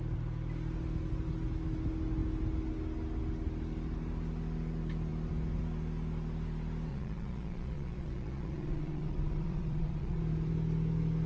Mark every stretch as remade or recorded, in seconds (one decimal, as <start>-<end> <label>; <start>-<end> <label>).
0.0-6.9 recorded; 6.9-10.2 remade; 10.2-11.3 recorded